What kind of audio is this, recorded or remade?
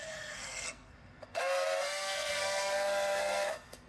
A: remade